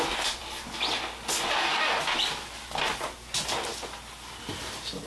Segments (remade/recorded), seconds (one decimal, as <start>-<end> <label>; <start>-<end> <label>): 0.0-5.1 recorded